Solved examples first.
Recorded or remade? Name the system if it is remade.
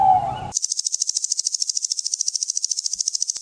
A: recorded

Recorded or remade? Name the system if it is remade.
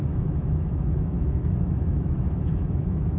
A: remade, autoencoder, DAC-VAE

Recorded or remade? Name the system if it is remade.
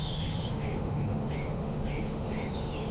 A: remade, autoencoder, DAC-VAE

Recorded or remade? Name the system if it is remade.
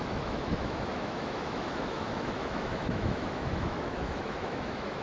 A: remade, autoencoder, DAC-VAE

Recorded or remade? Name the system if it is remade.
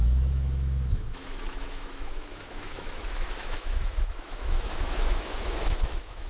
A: remade, autoencoder, DAC-VAE